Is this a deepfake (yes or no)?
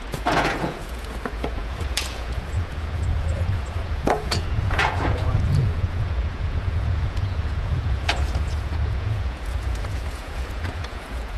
yes